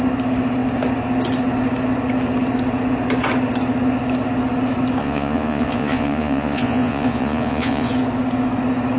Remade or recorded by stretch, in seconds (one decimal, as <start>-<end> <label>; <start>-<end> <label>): 0.0-5.0 recorded; 5.0-7.9 remade; 7.9-9.0 recorded